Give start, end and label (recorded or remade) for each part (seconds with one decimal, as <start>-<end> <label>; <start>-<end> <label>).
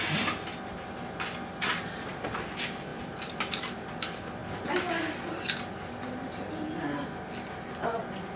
0.0-2.9 recorded; 2.9-3.5 remade; 3.5-8.4 recorded